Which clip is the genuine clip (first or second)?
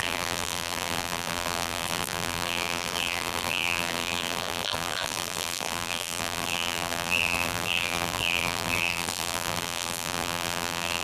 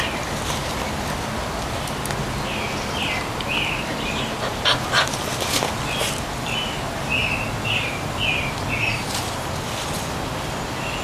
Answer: second